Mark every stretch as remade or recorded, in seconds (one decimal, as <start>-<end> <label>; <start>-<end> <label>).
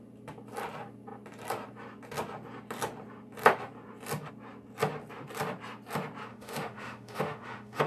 0.0-6.3 recorded; 6.3-7.9 remade